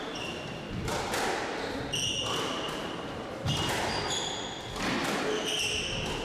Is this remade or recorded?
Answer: recorded